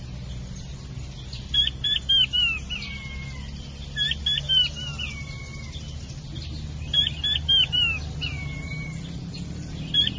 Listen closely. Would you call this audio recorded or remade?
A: recorded